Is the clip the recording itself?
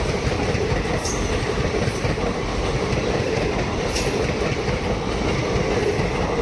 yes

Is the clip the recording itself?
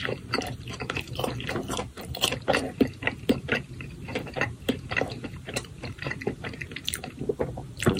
no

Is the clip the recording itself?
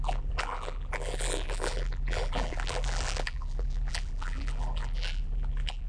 no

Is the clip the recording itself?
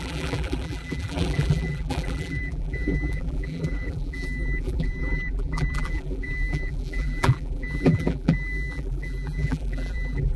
no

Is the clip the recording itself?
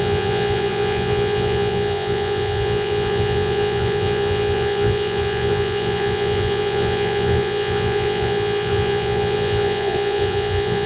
no